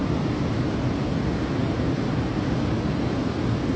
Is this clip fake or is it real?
real